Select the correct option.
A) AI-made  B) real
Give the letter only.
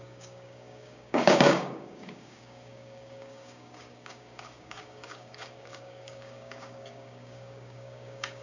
A